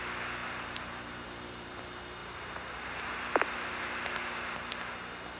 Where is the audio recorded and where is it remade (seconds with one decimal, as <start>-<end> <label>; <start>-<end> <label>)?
0.0-0.4 recorded; 0.4-1.8 remade; 1.8-2.2 recorded; 2.2-3.1 remade; 3.1-5.4 recorded

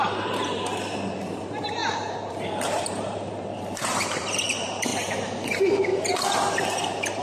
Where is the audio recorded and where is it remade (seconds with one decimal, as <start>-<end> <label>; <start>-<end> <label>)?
0.0-4.9 remade; 4.9-5.5 recorded; 5.5-5.9 remade; 5.9-6.7 recorded; 6.7-7.2 remade

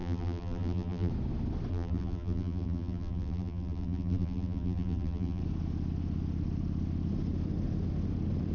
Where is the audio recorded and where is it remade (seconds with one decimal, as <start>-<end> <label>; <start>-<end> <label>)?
0.0-1.1 remade; 1.1-1.7 recorded; 1.7-5.4 remade; 5.4-8.5 recorded

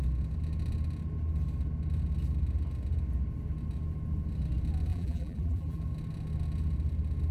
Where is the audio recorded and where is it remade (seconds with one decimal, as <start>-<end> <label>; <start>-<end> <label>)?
0.0-4.9 recorded; 4.9-5.8 remade; 5.8-7.3 recorded

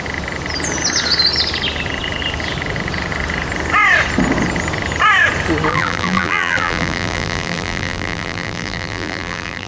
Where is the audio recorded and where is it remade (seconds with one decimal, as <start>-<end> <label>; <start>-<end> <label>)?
0.0-5.7 recorded; 5.7-9.7 remade

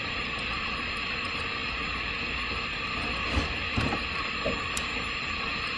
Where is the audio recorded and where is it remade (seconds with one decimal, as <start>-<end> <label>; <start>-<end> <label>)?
0.0-5.8 recorded

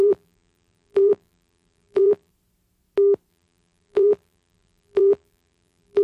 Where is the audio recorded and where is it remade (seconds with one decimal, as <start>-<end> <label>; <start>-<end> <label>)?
0.0-2.3 remade; 2.3-3.3 recorded; 3.3-6.0 remade